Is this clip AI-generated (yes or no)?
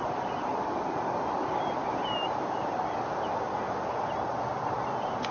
no